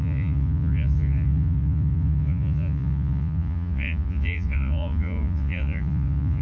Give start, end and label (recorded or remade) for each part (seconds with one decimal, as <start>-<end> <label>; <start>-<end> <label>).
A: 0.0-6.4 remade

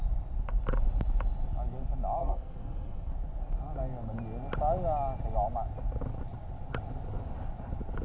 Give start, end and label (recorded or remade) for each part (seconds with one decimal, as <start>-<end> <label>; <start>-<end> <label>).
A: 0.0-2.2 recorded; 2.2-3.1 remade; 3.1-8.0 recorded

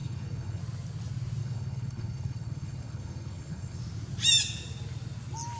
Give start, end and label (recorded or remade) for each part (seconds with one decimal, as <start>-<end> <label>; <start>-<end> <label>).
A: 0.0-0.6 remade; 0.6-1.4 recorded; 1.4-3.8 remade; 3.8-5.6 recorded

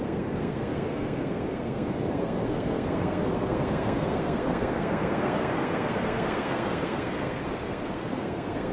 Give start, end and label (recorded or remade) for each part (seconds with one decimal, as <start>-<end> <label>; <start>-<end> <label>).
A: 0.0-8.7 remade